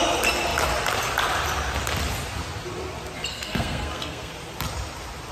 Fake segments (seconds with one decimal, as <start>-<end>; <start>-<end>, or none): 3.3-4.3